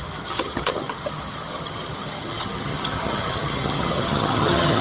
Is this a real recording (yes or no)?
no